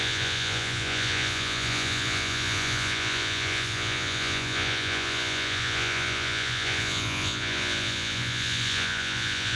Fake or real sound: fake